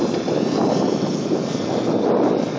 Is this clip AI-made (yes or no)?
no